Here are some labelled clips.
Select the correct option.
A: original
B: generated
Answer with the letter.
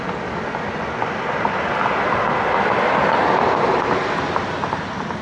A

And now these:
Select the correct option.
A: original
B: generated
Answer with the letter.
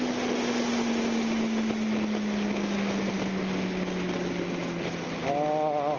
A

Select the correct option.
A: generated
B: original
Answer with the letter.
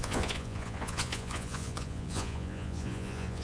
A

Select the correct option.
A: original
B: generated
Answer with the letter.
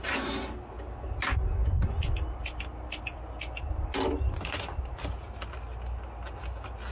A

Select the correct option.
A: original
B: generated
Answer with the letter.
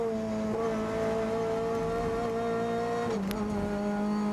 A